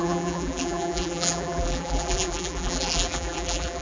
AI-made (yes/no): yes